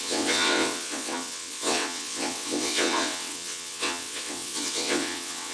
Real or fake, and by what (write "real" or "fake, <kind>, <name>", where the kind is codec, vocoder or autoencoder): fake, vocoder, WaveNeXt